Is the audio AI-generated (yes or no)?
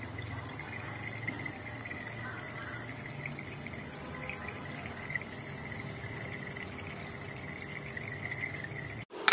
no